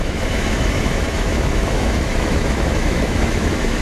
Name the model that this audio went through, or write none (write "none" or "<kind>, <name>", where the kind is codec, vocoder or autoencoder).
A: autoencoder, DAC-VAE